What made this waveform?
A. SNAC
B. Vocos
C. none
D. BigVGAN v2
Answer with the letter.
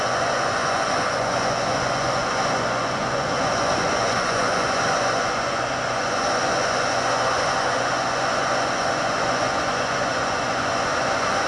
B